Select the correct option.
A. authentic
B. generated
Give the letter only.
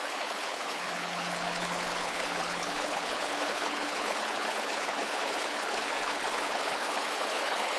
B